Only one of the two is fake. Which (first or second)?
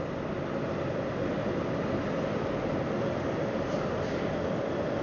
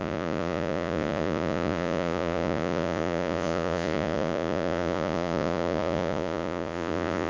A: second